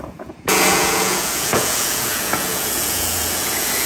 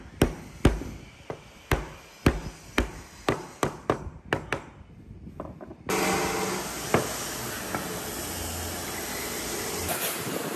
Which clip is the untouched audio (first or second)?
second